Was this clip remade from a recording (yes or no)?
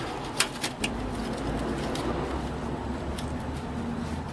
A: no